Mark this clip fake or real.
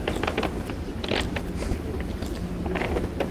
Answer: real